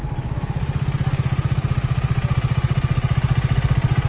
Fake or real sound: real